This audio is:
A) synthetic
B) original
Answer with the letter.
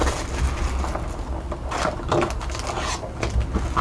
B